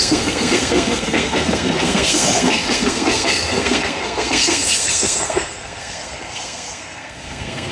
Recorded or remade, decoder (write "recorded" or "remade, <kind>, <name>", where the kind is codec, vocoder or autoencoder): remade, codec, SNAC